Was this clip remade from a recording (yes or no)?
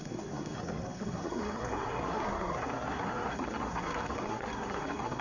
yes